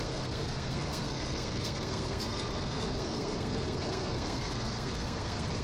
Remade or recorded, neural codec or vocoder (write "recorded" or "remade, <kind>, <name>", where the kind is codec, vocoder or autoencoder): remade, codec, SNAC